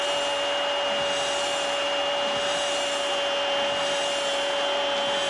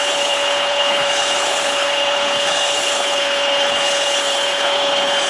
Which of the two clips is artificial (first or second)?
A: second